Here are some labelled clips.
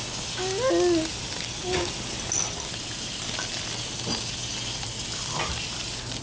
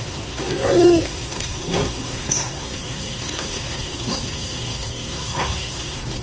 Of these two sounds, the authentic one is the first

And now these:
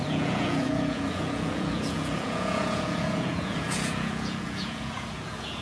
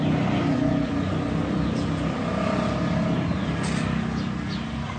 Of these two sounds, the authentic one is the second